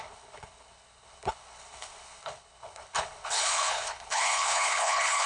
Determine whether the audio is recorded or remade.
remade